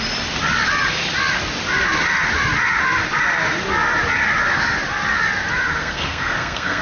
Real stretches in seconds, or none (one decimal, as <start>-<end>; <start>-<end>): 0.0-5.8